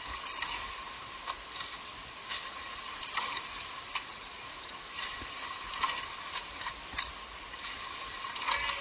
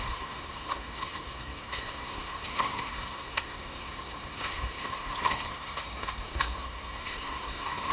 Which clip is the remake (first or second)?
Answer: second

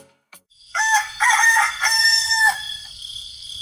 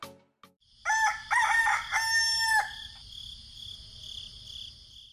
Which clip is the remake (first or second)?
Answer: first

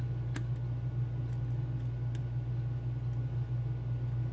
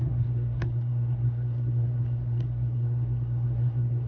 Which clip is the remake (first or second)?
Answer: second